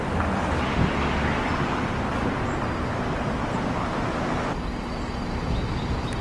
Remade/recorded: recorded